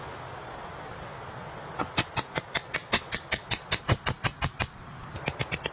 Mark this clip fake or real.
real